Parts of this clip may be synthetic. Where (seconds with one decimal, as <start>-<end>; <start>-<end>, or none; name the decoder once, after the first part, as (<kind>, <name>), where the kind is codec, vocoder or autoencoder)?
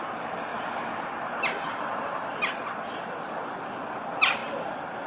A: none